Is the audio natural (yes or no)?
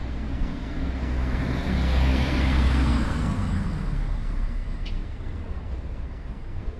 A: no